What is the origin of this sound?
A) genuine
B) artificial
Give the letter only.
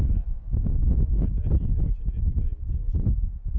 A